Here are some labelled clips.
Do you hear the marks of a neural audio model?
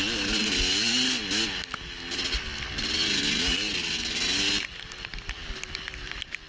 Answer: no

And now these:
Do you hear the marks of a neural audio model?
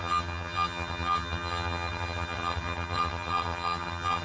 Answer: yes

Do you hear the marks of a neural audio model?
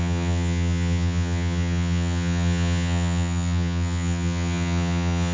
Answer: yes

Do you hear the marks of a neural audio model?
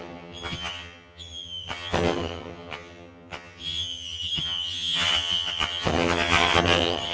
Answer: yes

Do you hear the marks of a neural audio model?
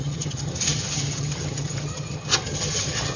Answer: yes